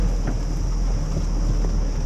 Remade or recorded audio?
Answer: recorded